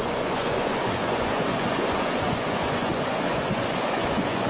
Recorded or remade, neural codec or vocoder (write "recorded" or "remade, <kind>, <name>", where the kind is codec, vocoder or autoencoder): remade, vocoder, Vocos